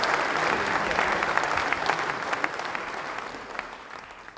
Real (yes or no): yes